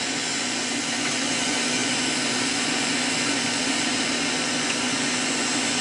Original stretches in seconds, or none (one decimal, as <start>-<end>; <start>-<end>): none